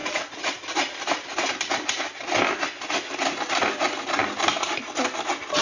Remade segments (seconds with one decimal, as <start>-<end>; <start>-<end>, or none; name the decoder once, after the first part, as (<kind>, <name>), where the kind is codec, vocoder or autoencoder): none

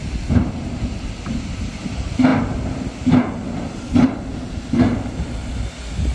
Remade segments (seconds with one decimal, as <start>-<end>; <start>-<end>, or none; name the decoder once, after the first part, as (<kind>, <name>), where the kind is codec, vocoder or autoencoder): none